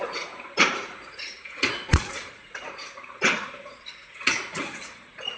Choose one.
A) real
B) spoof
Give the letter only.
B